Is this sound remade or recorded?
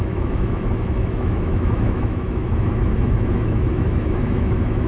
remade